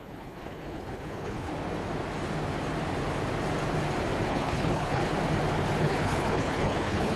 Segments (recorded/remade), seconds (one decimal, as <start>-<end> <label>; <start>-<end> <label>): 0.0-1.5 remade; 1.5-4.3 recorded; 4.3-5.0 remade; 5.0-5.8 recorded; 5.8-7.2 remade